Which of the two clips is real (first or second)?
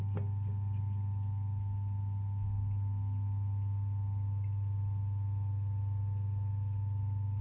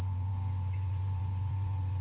first